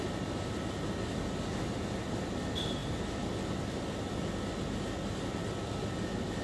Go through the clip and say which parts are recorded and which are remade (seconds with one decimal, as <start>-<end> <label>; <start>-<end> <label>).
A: 0.0-6.4 recorded